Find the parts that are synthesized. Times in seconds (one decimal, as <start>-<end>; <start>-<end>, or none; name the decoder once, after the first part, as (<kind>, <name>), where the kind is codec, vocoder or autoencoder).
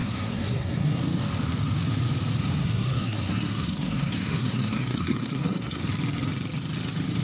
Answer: 0.0-1.0 (codec, SNAC); 2.6-5.8